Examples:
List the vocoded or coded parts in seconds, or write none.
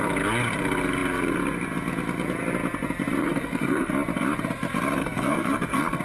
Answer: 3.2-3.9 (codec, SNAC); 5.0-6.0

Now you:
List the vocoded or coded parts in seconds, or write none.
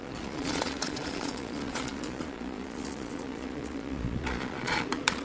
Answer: 0.0-5.2 (vocoder, Vocos)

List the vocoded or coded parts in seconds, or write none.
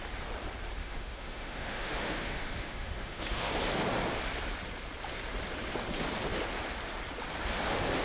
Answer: 0.8-3.5 (autoencoder, DAC-VAE)